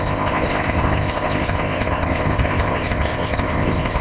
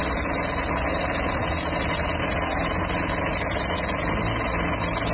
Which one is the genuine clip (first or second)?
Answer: second